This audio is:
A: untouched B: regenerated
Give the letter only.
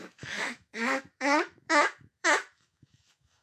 B